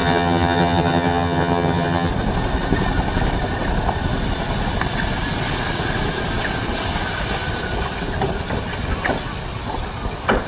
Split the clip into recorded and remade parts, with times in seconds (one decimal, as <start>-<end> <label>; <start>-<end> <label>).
0.0-2.1 remade; 2.1-10.5 recorded